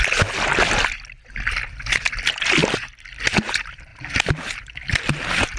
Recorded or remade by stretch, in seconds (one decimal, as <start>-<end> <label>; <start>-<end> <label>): 0.0-5.6 recorded